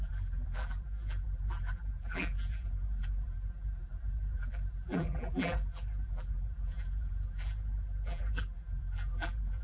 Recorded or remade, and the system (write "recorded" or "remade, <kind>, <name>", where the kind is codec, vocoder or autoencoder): remade, vocoder, BigVGAN v2